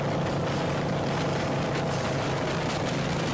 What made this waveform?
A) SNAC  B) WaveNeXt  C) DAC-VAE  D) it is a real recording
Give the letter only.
D